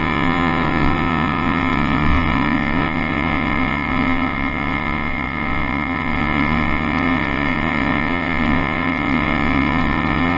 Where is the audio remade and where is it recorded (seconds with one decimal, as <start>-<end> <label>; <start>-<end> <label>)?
0.0-10.4 remade